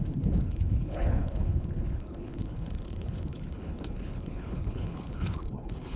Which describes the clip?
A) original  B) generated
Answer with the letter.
B